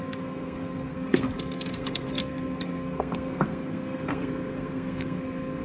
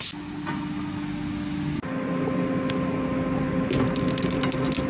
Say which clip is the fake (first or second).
first